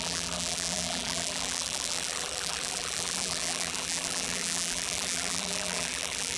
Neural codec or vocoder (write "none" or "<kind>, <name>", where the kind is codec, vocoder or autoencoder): vocoder, BigVGAN v2